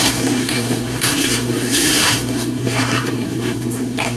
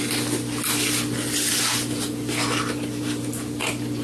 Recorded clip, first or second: second